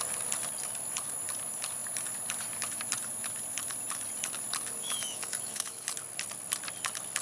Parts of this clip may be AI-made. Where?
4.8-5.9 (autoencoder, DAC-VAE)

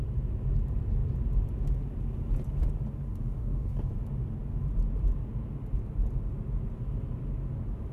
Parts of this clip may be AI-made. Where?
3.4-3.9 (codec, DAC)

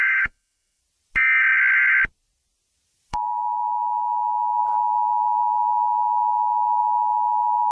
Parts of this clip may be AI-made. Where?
0.0-0.8 (autoencoder, DAC-VAE); 3.1-4.6; 6.8-7.7

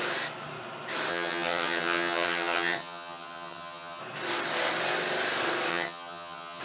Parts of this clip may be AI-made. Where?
1.1-4.0 (vocoder, HiFi-GAN); 5.7-6.6